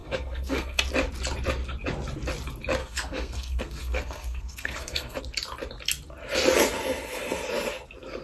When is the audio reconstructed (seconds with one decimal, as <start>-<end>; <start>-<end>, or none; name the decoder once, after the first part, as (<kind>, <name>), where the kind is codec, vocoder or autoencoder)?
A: 0.0-0.8 (codec, SNAC); 2.8-5.2